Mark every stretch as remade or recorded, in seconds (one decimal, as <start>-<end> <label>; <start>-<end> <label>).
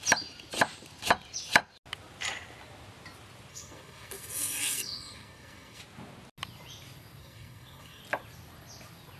0.0-3.5 recorded; 3.5-5.8 remade; 5.8-7.2 recorded; 7.2-8.0 remade; 8.0-9.2 recorded